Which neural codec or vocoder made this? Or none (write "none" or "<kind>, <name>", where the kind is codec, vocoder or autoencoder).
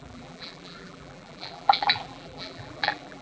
vocoder, BigVGAN v2